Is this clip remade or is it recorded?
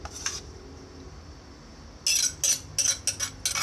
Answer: recorded